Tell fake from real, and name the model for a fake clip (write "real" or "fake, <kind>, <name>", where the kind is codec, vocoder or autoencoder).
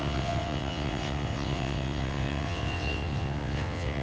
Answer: fake, vocoder, WaveNeXt